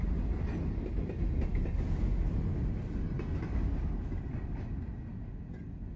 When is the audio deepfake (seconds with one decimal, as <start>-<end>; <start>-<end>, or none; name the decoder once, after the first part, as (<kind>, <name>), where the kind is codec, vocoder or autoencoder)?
none